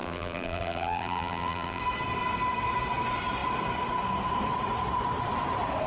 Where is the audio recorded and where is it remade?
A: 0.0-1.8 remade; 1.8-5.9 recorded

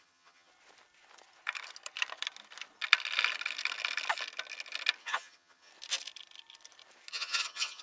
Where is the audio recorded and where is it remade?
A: 0.0-0.5 remade; 0.5-5.0 recorded; 5.0-5.7 remade; 5.7-7.1 recorded; 7.1-7.8 remade

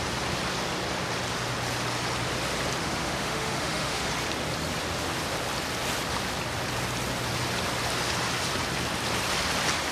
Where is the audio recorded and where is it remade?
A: 0.0-2.8 recorded; 2.8-4.1 remade; 4.1-9.9 recorded